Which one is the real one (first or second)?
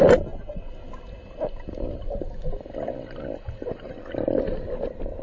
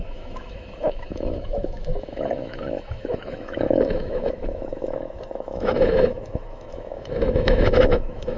first